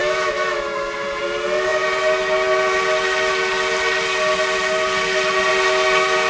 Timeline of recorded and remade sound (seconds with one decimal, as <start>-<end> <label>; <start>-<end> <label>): 0.0-1.2 remade; 1.2-6.3 recorded